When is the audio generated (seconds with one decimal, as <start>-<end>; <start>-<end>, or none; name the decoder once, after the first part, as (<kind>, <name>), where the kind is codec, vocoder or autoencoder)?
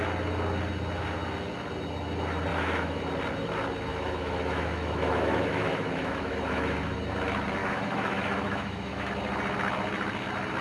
2.5-3.0 (autoencoder, DAC-VAE); 3.9-7.0; 7.6-9.1